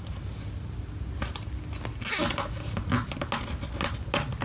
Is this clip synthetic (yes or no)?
no